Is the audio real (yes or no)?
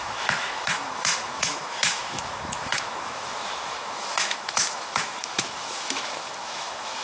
no